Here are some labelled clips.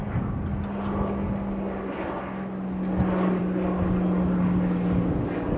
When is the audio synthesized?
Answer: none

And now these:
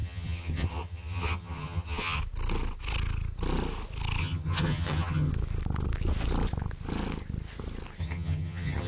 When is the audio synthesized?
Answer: 0.0-2.2 (vocoder, HiFi-GAN); 4.2-5.3; 8.0-8.9

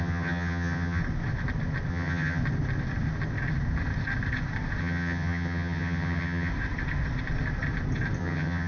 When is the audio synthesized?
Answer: 0.0-1.0 (vocoder, HiFi-GAN); 1.9-2.4; 4.8-6.5; 8.2-8.7